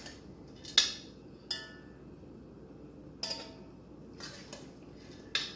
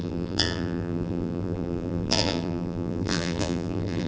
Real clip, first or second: first